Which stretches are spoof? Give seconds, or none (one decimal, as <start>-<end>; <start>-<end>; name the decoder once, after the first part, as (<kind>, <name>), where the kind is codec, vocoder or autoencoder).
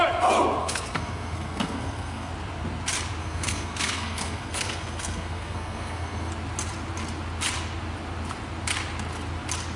0.6-2.3 (codec, SNAC); 3.2-6.3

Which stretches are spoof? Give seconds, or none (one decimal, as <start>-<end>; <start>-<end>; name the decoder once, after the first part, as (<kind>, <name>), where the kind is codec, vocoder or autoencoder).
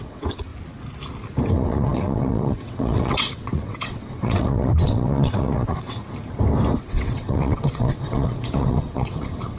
0.0-0.5 (vocoder, WaveNeXt); 1.5-6.0; 6.8-9.6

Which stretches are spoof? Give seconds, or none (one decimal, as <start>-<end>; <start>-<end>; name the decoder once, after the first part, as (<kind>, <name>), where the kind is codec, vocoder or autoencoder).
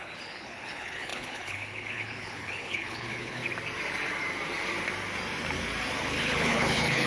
0.0-3.4 (codec, HILCodec); 6.2-7.1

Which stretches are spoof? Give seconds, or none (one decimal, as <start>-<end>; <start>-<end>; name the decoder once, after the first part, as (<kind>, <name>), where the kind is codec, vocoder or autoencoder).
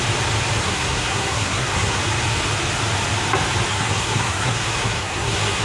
0.6-2.0 (codec, SNAC); 3.7-5.6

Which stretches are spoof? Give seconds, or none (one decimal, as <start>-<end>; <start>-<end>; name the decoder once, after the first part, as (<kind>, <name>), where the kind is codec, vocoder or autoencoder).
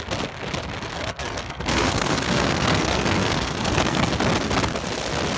0.9-4.1 (codec, SNAC)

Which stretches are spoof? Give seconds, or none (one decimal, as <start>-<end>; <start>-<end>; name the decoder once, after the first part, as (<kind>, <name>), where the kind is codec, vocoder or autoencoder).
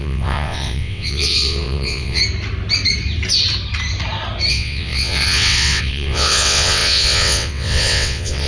0.0-2.2 (vocoder, WaveNeXt); 4.5-8.5